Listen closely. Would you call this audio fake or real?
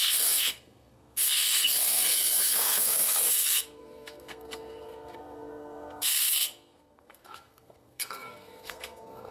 fake